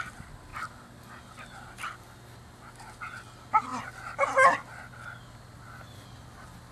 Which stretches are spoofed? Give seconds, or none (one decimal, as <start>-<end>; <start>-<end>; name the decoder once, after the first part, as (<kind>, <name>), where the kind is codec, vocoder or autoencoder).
none